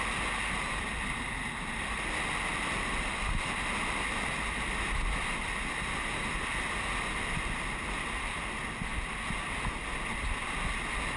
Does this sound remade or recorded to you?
recorded